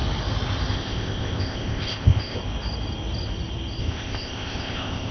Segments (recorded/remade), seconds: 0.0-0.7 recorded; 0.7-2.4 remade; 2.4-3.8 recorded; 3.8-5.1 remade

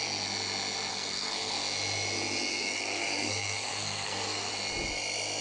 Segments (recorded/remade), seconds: 0.0-0.9 recorded; 0.9-1.5 remade; 1.5-2.5 recorded; 2.5-4.5 remade; 4.5-5.4 recorded

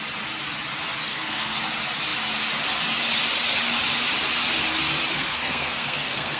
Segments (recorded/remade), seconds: 0.0-1.1 recorded; 1.1-1.6 remade; 1.6-5.1 recorded; 5.1-6.4 remade

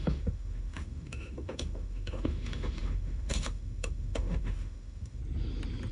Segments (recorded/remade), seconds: 0.0-5.2 remade; 5.2-5.9 recorded

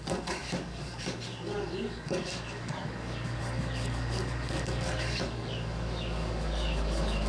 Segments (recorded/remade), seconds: 0.0-7.3 remade

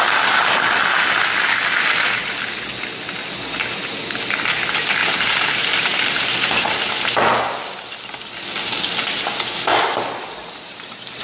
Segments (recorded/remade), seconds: 0.0-5.0 recorded; 5.0-7.0 remade; 7.0-9.7 recorded; 9.7-11.2 remade